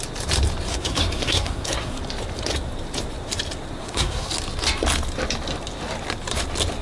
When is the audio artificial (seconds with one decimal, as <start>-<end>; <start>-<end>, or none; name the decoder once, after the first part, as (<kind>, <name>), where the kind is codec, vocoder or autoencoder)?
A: 0.7-2.0 (codec, SNAC); 3.8-4.3